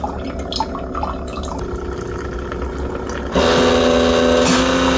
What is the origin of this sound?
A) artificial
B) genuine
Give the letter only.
B